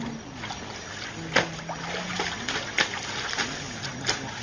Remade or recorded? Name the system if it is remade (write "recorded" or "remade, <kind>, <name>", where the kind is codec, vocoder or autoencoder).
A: recorded